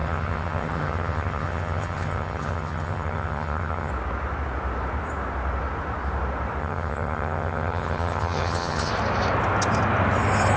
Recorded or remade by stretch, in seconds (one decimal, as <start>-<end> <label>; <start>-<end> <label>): 0.0-3.9 remade; 3.9-6.6 recorded; 6.6-8.9 remade; 8.9-10.6 recorded